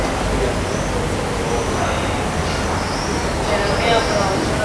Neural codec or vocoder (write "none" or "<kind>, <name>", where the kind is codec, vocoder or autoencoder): none